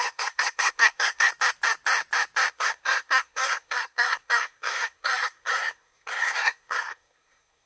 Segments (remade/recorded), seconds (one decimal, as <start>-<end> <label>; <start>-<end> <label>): 0.0-1.3 remade; 1.3-2.5 recorded; 2.5-7.7 remade